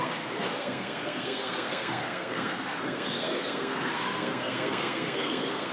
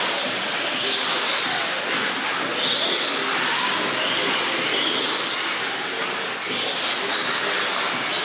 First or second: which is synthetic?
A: first